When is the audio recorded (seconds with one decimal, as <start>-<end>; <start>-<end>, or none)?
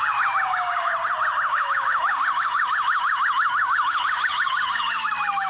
0.9-1.5